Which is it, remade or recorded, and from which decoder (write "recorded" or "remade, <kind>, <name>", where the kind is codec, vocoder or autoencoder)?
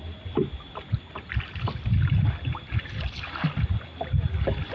recorded